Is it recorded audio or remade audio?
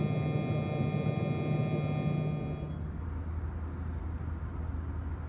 recorded